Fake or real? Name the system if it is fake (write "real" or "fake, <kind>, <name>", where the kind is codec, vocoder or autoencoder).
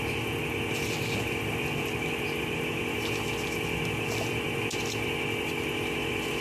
real